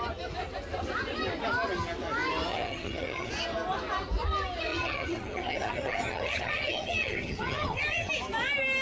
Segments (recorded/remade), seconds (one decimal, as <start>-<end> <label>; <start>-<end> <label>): 0.0-2.5 recorded; 2.5-3.3 remade; 3.3-4.7 recorded; 4.7-8.1 remade; 8.1-8.8 recorded